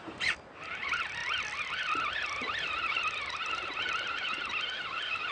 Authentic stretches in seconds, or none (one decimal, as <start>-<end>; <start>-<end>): 0.0-1.2; 4.4-5.3